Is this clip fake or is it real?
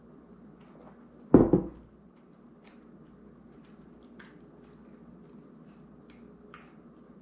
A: real